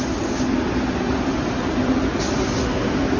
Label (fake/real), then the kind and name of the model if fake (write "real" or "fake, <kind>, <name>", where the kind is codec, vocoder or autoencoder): real